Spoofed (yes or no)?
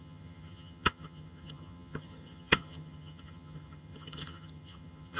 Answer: yes